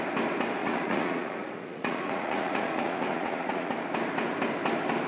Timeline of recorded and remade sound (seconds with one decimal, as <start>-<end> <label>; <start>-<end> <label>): 0.0-0.6 recorded; 0.6-3.7 remade; 3.7-5.1 recorded